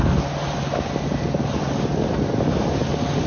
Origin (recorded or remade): recorded